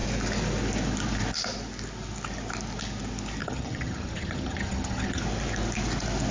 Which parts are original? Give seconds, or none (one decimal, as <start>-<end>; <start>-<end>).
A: 0.0-3.4; 5.2-6.3